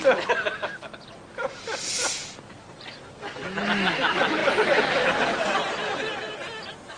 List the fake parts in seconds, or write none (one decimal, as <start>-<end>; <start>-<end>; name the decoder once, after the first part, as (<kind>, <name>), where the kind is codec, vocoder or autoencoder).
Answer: none